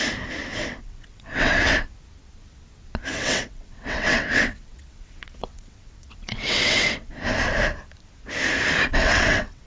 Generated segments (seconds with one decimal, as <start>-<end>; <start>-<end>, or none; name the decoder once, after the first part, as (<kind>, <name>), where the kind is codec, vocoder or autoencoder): 0.6-1.7 (vocoder, WaveNeXt); 3.2-7.1; 8.9-9.7